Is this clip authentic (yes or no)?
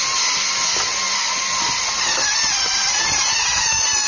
yes